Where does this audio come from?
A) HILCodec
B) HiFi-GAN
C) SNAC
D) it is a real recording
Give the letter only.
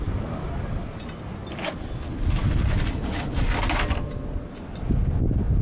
D